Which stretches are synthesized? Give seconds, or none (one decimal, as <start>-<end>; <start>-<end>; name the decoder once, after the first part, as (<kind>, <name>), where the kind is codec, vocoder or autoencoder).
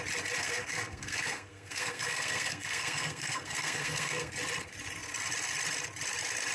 0.4-4.3 (codec, SNAC)